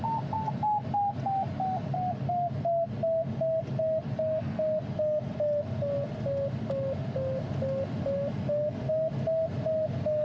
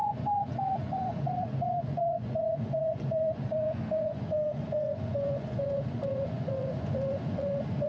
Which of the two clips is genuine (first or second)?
first